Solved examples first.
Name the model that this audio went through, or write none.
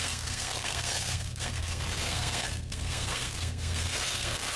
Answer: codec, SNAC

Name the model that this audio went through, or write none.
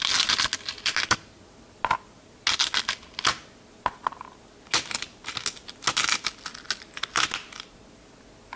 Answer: none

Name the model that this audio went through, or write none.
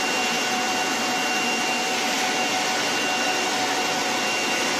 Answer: none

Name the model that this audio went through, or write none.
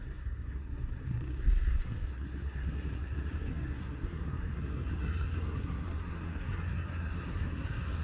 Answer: codec, SNAC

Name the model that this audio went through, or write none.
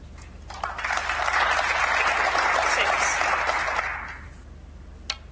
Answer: none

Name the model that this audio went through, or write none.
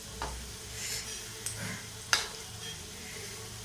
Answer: none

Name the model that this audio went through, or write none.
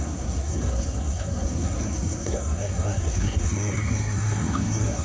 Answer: codec, SNAC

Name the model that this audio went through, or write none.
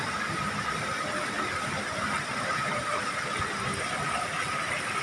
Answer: none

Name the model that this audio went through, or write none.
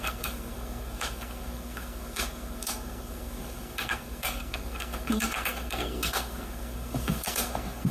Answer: codec, SNAC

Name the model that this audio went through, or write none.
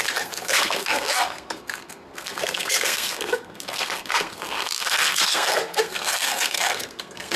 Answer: codec, SNAC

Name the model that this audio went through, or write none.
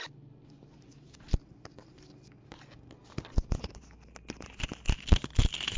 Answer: none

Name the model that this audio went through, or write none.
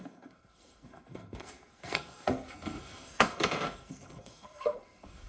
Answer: codec, SNAC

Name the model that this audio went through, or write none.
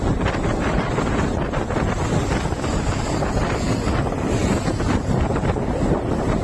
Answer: none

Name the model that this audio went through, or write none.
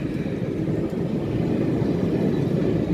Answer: none